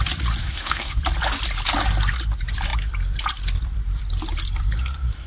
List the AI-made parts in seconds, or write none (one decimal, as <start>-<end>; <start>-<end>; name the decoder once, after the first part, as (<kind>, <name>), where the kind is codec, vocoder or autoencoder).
0.4-1.0 (autoencoder, DAC-VAE)